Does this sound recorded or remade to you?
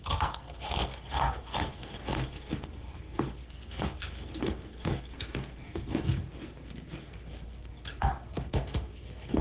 remade